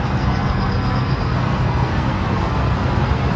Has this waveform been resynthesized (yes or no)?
yes